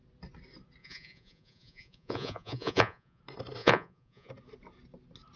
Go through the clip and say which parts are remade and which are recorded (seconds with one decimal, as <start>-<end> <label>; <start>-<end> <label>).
0.0-0.8 recorded; 0.8-3.2 remade; 3.2-3.6 recorded; 3.6-4.3 remade; 4.3-5.4 recorded